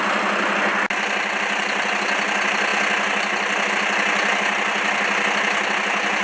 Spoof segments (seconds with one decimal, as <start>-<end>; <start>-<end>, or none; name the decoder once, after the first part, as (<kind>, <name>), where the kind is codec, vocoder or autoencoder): none